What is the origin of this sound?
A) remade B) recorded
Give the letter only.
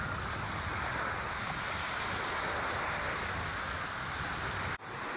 B